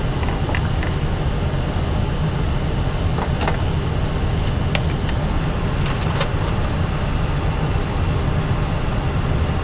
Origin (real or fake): real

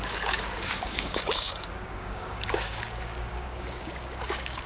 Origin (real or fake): fake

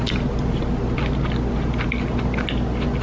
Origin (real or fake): real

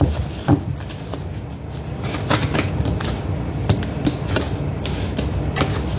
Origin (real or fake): real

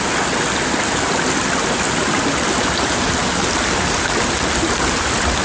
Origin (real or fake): real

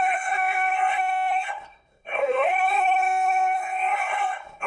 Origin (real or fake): fake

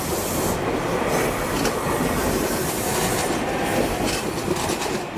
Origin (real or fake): real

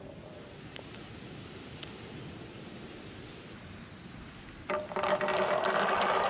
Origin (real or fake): real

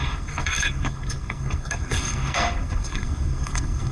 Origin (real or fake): fake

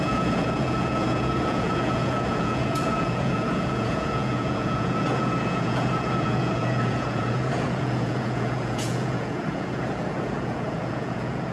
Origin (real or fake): fake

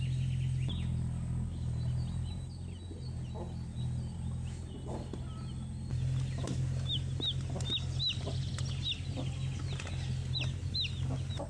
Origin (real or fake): real